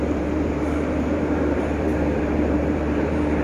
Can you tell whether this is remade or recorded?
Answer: remade